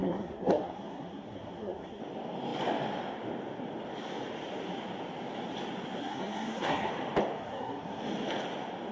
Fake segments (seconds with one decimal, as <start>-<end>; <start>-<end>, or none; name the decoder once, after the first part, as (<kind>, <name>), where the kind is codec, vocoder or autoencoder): 0.0-2.0 (codec, SNAC); 6.0-6.9; 7.4-8.0